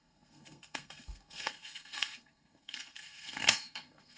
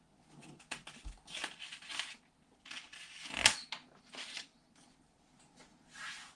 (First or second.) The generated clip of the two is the first